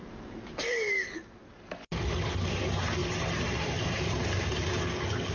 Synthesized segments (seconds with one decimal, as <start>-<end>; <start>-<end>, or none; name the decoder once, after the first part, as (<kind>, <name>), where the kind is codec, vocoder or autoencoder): 0.0-0.6 (vocoder, BigVGAN v2); 3.0-4.8